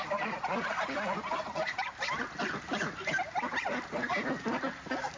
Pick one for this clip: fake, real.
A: real